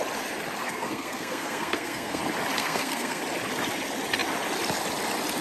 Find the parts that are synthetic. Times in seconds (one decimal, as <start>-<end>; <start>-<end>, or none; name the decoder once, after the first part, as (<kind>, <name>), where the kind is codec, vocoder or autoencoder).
0.6-2.2 (codec, SNAC); 2.6-3.2